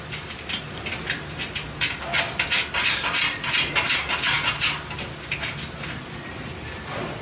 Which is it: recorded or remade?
recorded